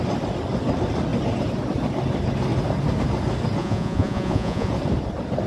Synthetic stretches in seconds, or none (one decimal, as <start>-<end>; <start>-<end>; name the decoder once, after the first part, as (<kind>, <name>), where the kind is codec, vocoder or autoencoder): 3.6-4.7 (vocoder, Vocos)